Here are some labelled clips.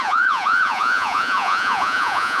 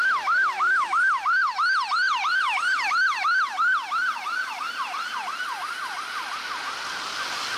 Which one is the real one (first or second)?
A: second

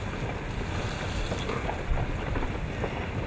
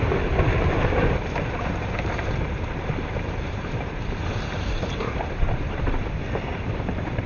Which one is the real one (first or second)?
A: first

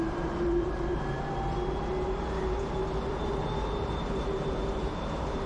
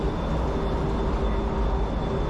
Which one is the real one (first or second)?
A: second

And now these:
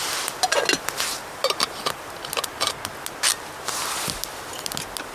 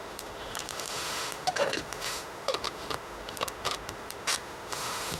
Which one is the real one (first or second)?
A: first